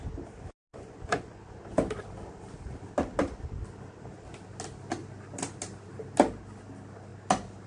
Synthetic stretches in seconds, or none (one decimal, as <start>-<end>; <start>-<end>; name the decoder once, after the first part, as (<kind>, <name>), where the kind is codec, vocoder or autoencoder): 0.7-1.4 (vocoder, Vocos)

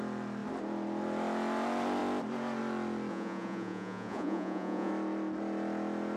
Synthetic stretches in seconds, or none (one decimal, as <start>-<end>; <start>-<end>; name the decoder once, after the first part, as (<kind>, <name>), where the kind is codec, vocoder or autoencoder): 3.1-4.9 (vocoder, Vocos)

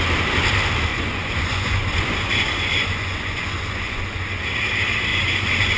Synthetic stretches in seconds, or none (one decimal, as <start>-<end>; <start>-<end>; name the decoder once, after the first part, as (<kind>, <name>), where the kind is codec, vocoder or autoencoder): 0.9-4.4 (vocoder, Vocos); 5.1-5.8

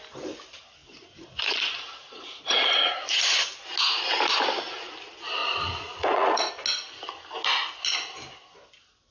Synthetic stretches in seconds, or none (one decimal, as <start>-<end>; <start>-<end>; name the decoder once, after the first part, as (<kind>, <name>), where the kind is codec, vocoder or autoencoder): 0.8-2.9 (vocoder, Vocos); 5.4-6.5

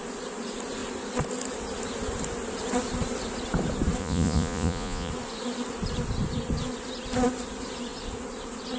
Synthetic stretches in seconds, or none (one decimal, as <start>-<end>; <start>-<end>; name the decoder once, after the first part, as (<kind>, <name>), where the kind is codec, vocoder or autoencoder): 4.0-5.1 (vocoder, Vocos)

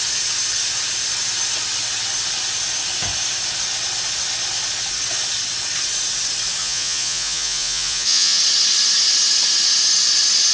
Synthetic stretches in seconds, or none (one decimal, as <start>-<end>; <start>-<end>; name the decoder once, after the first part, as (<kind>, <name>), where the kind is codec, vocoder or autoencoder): 6.6-8.4 (vocoder, Vocos)